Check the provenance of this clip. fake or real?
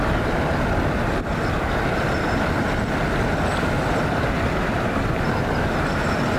real